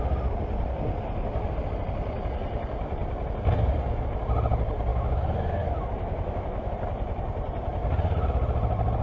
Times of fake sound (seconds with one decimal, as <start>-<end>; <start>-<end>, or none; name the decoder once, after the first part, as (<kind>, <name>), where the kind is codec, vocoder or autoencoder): 4.9-6.7 (autoencoder, DAC-VAE)